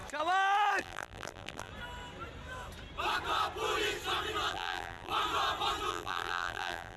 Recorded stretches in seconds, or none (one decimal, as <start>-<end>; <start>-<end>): 0.0-0.8; 1.7-4.5; 5.1-5.9